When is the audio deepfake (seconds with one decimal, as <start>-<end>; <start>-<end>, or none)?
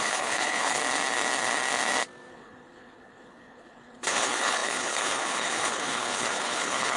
0.0-0.8; 2.3-7.0